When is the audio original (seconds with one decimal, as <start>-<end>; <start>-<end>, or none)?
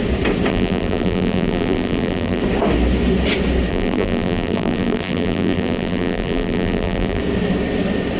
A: 0.0-0.5; 2.4-3.7; 7.2-8.2